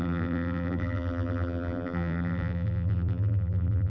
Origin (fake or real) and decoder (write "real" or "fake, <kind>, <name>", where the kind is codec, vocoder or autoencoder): fake, vocoder, BigVGAN v2